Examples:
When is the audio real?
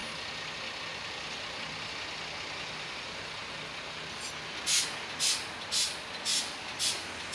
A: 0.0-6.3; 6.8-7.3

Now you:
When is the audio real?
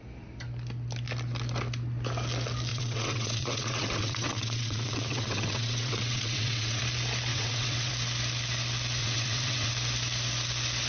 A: 0.0-2.7; 6.8-7.3; 7.9-9.0; 9.7-10.9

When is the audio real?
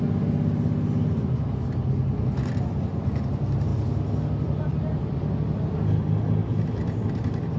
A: 0.0-3.7; 5.7-6.4; 6.9-7.6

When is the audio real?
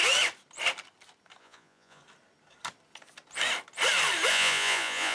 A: 0.0-1.4; 2.0-4.3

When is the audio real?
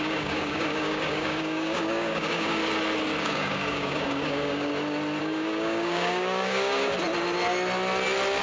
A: 2.6-3.2; 4.7-5.2; 6.9-8.4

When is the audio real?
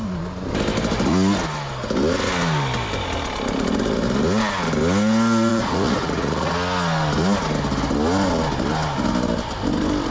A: 0.0-5.5; 6.5-10.1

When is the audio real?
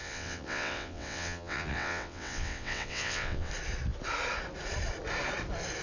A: 3.5-5.8